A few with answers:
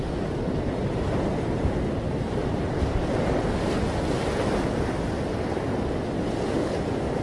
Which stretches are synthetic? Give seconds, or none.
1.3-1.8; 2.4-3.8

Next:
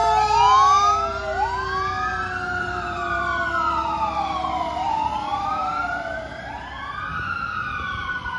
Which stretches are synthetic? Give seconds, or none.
2.6-5.6; 7.7-8.4

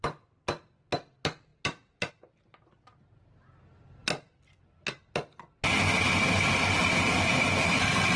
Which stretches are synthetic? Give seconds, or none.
none

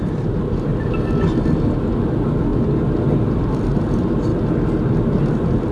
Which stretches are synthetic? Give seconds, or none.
0.0-0.7; 2.1-2.5; 3.1-4.3; 5.0-5.7